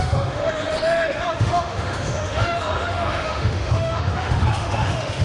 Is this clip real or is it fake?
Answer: fake